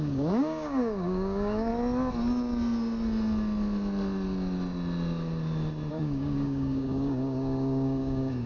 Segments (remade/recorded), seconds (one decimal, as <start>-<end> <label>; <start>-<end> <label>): 0.0-1.7 remade; 1.7-5.9 recorded; 5.9-8.5 remade

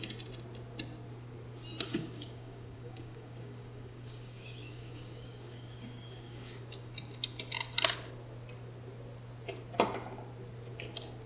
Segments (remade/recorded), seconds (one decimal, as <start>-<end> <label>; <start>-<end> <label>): 0.0-1.9 recorded; 1.9-6.6 remade; 6.6-11.3 recorded

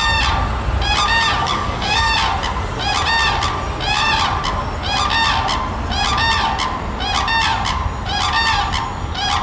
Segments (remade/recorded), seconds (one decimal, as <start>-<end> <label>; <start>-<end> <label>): 0.0-1.4 recorded; 1.4-2.1 remade; 2.1-9.4 recorded